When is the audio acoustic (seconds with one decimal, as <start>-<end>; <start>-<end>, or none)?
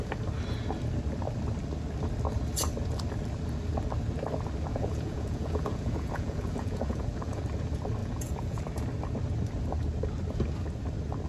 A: 0.0-4.7; 7.4-8.0; 8.6-11.3